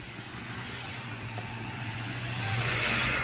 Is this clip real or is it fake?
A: fake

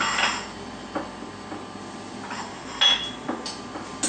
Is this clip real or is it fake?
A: real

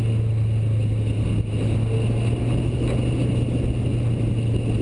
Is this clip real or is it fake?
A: real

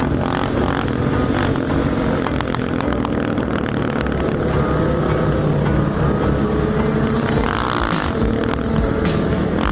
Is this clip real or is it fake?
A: real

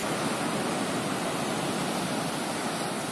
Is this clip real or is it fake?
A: real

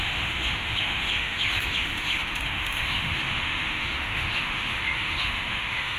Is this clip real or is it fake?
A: fake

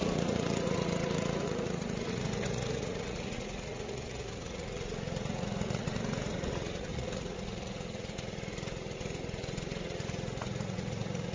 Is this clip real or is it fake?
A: fake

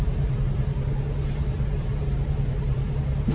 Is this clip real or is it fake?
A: fake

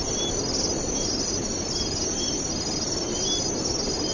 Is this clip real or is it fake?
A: real